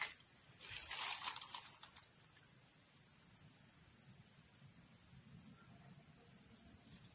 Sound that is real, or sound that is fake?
real